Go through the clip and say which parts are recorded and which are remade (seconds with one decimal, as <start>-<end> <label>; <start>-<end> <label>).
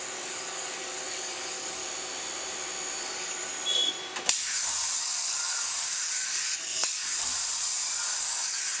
0.0-1.8 remade; 1.8-3.0 recorded; 3.0-3.5 remade; 3.5-5.0 recorded; 5.0-7.3 remade; 7.3-8.2 recorded; 8.2-8.8 remade